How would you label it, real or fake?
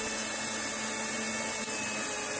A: real